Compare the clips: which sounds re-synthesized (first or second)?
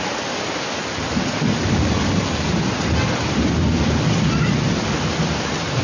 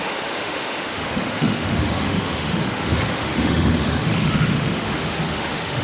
second